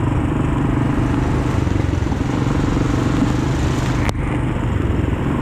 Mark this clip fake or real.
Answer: real